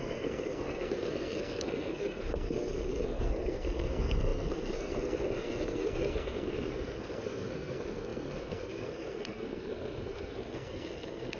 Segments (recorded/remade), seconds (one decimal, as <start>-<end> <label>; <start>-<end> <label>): 0.0-11.4 remade